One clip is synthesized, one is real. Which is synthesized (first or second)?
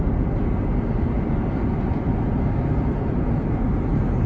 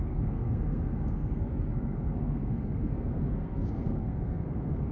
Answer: second